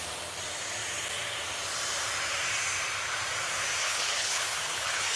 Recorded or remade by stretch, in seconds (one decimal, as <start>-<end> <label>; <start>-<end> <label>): 0.0-3.8 recorded; 3.8-5.2 remade